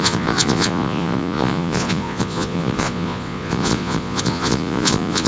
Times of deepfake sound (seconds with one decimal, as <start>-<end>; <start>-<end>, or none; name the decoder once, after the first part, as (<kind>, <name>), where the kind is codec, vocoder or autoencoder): 0.0-5.3 (vocoder, Vocos)